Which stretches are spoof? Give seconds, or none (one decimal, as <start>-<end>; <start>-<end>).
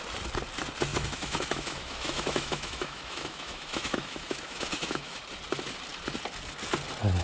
0.9-5.2